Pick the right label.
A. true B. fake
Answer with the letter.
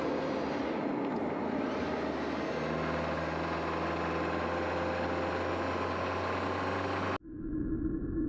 A